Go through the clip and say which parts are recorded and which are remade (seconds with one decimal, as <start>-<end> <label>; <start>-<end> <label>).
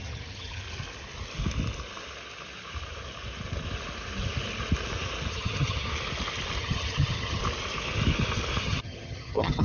0.0-0.6 remade; 0.6-5.3 recorded; 5.3-5.9 remade; 5.9-6.6 recorded; 6.6-7.4 remade; 7.4-8.6 recorded; 8.6-9.6 remade